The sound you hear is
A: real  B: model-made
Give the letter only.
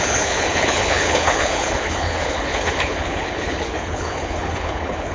B